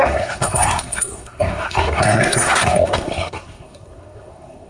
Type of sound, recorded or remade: remade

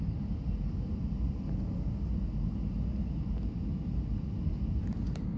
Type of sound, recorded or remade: recorded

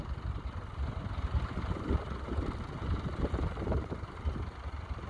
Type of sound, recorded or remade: recorded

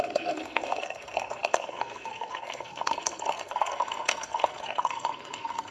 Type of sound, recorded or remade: remade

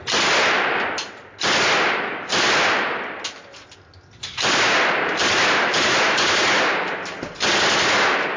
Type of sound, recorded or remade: recorded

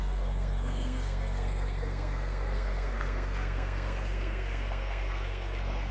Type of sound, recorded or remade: remade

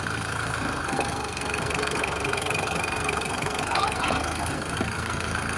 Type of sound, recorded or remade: remade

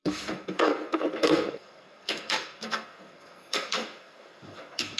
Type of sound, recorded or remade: remade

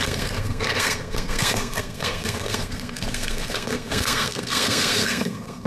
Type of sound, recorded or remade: remade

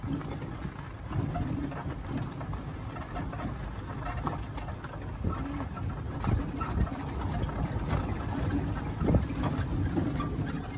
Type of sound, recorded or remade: recorded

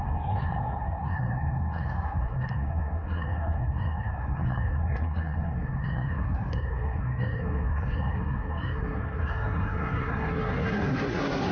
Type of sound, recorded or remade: remade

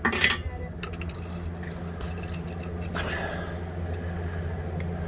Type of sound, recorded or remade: recorded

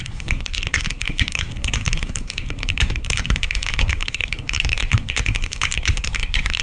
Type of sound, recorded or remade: remade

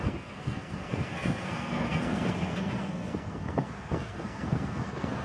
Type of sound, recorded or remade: remade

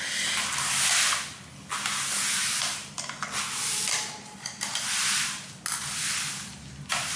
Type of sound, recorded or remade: recorded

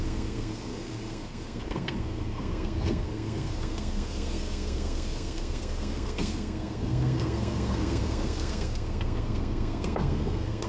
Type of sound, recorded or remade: remade